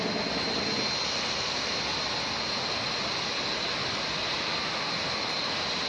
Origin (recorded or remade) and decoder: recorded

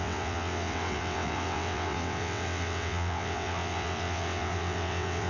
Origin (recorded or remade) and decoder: remade, vocoder, WaveNeXt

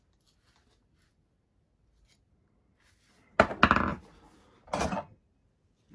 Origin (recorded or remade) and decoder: recorded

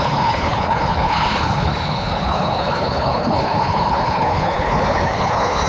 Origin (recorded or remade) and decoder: remade, codec, HILCodec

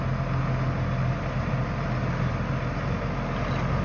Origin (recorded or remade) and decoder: recorded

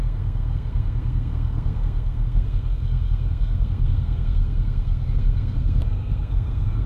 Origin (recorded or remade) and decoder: remade, codec, SNAC